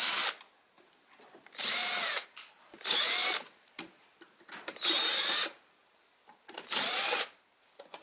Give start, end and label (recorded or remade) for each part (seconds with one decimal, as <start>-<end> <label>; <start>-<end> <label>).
0.0-8.0 recorded